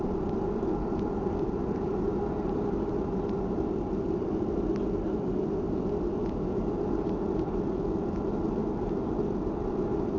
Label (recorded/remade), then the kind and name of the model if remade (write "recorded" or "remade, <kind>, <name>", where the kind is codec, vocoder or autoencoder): recorded